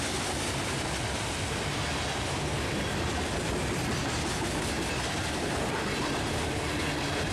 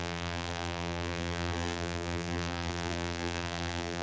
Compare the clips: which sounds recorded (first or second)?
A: first